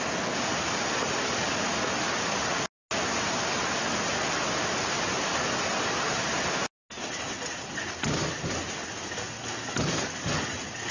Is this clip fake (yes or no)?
no